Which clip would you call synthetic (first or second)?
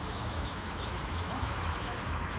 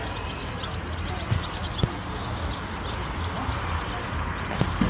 first